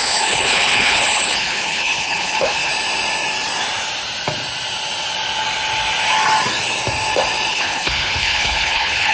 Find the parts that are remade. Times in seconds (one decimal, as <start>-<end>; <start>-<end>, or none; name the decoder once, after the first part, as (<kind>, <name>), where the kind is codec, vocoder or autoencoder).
0.0-2.7 (codec, HILCodec); 7.5-9.1